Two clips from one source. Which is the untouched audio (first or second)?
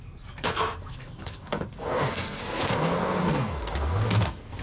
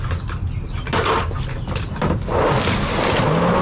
second